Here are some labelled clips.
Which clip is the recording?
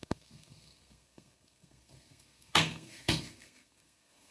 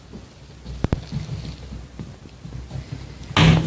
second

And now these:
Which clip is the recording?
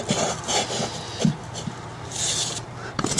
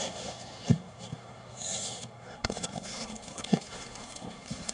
first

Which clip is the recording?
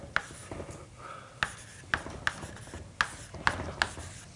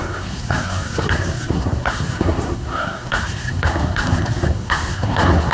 first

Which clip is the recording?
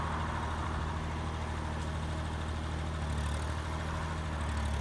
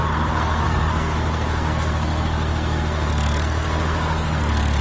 first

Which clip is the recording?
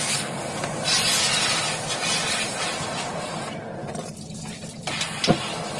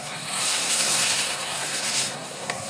first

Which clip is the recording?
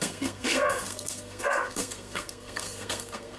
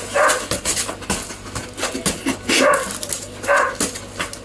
second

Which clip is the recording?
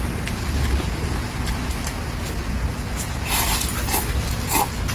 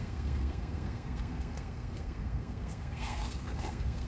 first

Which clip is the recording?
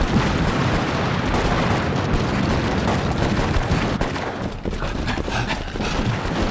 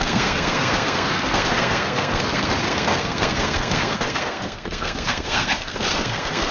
first